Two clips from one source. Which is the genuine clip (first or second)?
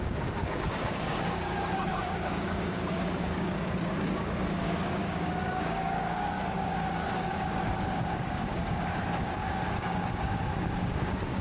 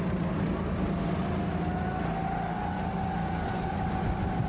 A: second